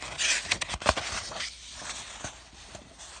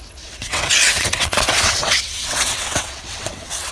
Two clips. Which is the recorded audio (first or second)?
first